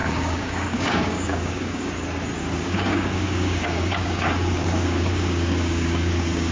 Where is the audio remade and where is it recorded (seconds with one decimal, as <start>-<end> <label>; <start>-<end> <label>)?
0.0-1.9 remade; 1.9-2.4 recorded; 2.4-6.5 remade